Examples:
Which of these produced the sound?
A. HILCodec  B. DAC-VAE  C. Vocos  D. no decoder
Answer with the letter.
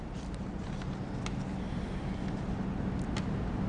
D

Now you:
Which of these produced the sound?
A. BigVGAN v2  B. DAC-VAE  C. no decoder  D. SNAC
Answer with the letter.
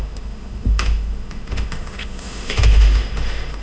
B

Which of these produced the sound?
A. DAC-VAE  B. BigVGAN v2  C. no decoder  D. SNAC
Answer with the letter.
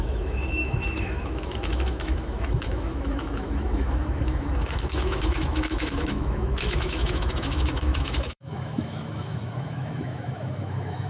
A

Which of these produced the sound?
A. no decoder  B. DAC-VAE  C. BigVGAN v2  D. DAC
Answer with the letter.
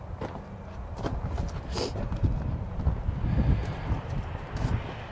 A